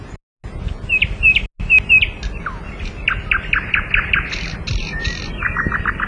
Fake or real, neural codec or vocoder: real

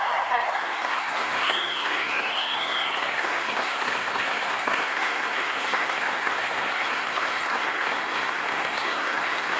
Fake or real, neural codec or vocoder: fake, codec, SNAC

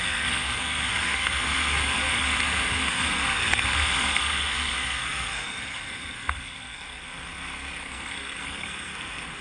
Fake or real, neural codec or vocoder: fake, codec, SNAC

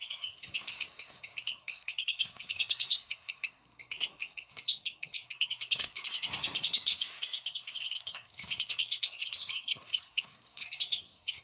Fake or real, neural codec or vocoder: fake, codec, SNAC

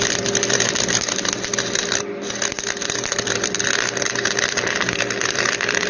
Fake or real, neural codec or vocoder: fake, vocoder, BigVGAN v2